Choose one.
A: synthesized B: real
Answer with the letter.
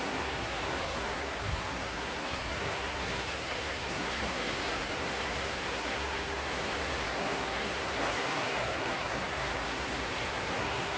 A